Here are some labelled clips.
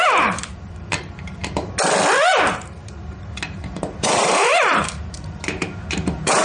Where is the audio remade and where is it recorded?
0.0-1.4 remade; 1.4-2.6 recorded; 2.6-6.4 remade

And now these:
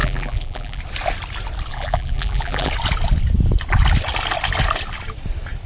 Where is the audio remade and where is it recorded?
0.0-0.8 remade; 0.8-1.7 recorded; 1.7-2.7 remade; 2.7-5.7 recorded

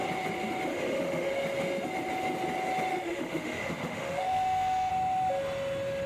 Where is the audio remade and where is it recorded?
0.0-0.7 recorded; 0.7-1.3 remade; 1.3-2.9 recorded; 2.9-4.9 remade; 4.9-6.1 recorded

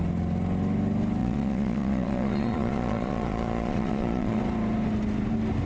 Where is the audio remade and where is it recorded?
0.0-1.2 recorded; 1.2-4.4 remade; 4.4-5.7 recorded

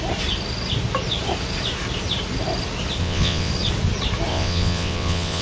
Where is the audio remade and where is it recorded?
0.0-3.0 recorded; 3.0-3.5 remade; 3.5-4.3 recorded; 4.3-5.4 remade

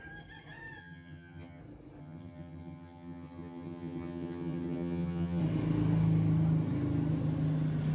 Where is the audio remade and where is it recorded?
0.0-0.8 recorded; 0.8-1.6 remade; 1.6-2.0 recorded; 2.0-5.4 remade; 5.4-7.9 recorded

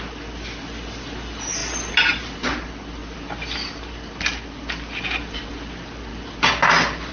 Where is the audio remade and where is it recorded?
0.0-7.1 recorded

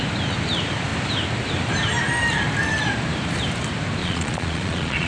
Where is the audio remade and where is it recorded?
0.0-4.0 recorded; 4.0-5.1 remade